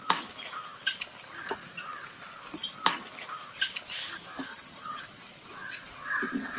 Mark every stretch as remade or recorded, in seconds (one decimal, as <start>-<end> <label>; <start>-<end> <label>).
0.0-4.5 recorded; 4.5-5.0 remade; 5.0-6.6 recorded